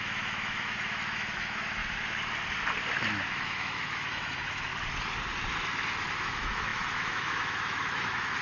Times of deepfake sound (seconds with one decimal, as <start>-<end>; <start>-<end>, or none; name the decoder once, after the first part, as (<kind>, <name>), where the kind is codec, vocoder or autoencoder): 0.0-1.8 (autoencoder, DAC-VAE); 3.3-4.7; 6.1-8.4